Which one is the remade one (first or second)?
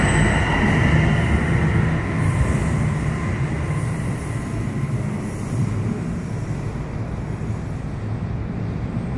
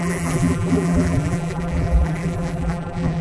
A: second